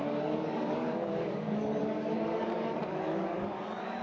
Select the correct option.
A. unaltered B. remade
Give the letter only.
B